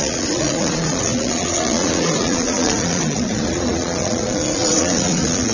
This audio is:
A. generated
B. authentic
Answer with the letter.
A